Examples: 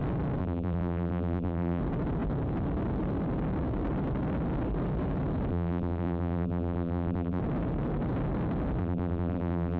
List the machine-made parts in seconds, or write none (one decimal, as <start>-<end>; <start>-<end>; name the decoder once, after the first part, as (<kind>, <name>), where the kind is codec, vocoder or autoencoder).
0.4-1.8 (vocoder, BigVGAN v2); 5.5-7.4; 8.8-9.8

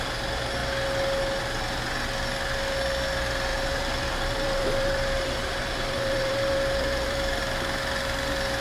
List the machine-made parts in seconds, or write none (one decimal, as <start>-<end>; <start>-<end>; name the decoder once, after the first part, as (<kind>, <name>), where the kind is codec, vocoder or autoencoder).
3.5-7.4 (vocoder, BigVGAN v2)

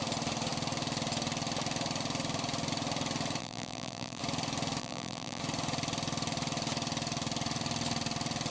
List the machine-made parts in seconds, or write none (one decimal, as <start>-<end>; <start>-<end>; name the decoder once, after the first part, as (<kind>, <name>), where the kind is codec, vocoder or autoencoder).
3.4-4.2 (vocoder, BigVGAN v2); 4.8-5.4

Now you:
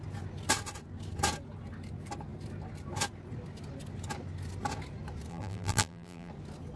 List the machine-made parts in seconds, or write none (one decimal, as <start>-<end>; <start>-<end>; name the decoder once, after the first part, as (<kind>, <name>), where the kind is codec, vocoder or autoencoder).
5.3-6.3 (vocoder, BigVGAN v2)

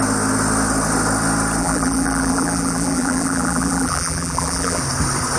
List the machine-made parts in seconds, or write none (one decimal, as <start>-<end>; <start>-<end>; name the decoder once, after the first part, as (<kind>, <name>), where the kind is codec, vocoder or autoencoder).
1.6-4.8 (vocoder, BigVGAN v2)

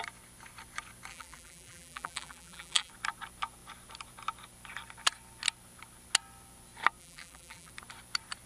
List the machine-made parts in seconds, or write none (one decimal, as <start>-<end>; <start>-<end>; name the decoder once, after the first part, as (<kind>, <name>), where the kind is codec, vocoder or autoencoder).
1.1-2.9 (vocoder, BigVGAN v2); 7.0-7.7